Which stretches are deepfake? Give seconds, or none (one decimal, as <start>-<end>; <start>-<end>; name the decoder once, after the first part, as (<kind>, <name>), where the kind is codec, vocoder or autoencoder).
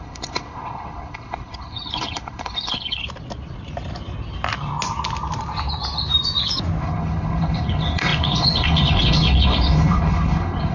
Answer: 0.0-3.0 (codec, HILCodec); 6.8-10.7